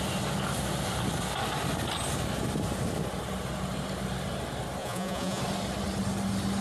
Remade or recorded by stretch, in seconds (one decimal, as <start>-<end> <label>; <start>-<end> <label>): 0.0-4.8 recorded; 4.8-5.4 remade; 5.4-6.6 recorded